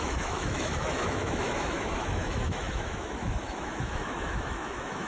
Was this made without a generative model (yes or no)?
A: no